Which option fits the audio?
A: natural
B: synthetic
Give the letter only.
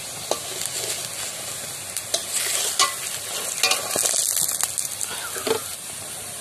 A